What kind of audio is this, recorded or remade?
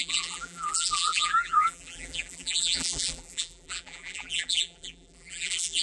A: remade